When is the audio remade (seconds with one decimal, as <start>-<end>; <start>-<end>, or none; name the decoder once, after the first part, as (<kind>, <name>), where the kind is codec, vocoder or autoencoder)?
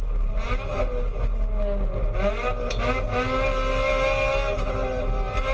none